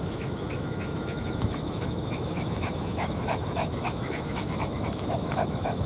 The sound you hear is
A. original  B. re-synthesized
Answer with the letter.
B